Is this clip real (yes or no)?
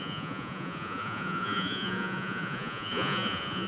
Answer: no